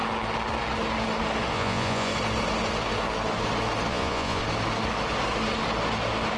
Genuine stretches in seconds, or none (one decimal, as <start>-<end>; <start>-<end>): 0.0-1.5; 2.1-3.9; 4.4-6.4